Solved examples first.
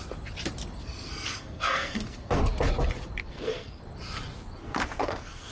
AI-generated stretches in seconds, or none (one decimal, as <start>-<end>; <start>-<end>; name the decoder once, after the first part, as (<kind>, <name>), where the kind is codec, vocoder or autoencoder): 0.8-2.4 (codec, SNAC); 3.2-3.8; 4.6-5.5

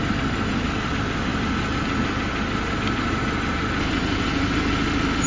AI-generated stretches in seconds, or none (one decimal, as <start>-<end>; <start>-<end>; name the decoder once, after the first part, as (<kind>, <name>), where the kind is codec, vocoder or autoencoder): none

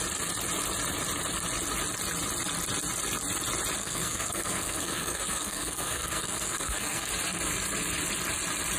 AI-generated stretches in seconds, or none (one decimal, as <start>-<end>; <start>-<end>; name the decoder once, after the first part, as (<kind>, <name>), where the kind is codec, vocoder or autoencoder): 3.8-7.1 (codec, SNAC)

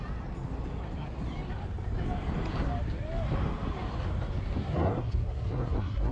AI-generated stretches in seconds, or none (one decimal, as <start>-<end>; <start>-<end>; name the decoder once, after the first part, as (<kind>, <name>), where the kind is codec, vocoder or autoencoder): 4.6-6.1 (codec, SNAC)

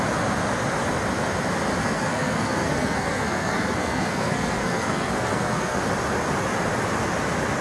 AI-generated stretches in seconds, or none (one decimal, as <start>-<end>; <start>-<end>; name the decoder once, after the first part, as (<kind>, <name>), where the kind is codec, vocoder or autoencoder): 1.8-5.8 (codec, SNAC)